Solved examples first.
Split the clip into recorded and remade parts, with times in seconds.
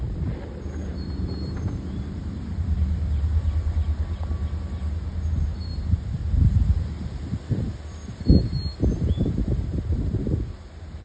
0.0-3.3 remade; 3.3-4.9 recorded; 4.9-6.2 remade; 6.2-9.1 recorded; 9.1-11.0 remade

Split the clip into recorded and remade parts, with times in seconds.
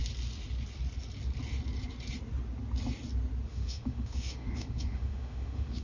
0.0-3.5 recorded; 3.5-5.8 remade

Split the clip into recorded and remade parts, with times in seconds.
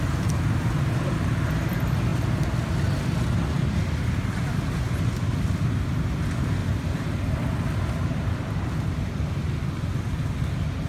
0.0-6.6 recorded; 6.6-10.0 remade; 10.0-10.9 recorded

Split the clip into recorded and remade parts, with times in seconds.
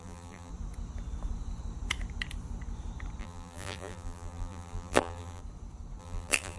0.0-0.5 remade; 0.5-3.2 recorded; 3.2-5.4 remade; 5.4-6.0 recorded; 6.0-6.6 remade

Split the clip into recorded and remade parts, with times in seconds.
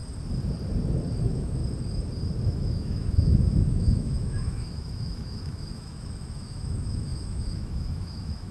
0.0-1.2 recorded; 1.2-1.6 remade; 1.6-2.5 recorded; 2.5-8.5 remade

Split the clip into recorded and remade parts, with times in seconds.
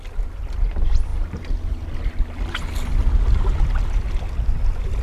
0.0-5.0 recorded